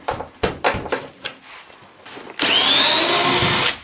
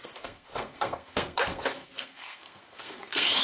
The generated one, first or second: second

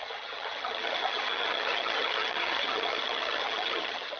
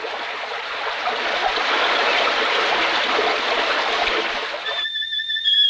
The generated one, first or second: first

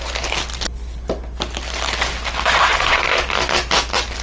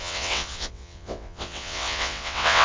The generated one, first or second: second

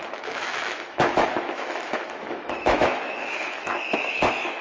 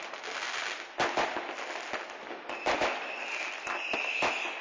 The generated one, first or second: first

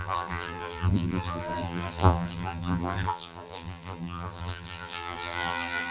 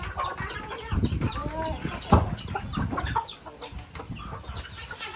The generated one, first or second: first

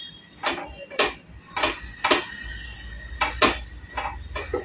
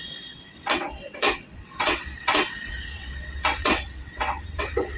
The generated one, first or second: second